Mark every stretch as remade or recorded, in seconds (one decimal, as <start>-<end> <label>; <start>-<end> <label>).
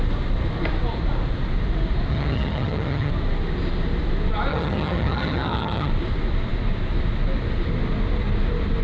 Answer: 0.0-2.1 recorded; 2.1-3.1 remade; 3.1-4.5 recorded; 4.5-5.9 remade; 5.9-8.8 recorded